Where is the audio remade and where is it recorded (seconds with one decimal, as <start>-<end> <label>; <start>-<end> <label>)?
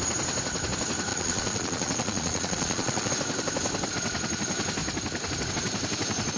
0.0-1.1 recorded; 1.1-3.1 remade; 3.1-6.4 recorded